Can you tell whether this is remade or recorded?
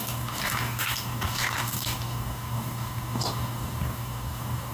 remade